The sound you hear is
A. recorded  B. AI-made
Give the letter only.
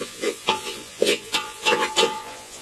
B